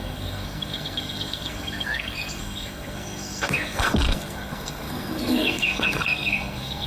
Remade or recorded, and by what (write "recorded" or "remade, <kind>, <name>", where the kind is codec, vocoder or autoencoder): remade, codec, SNAC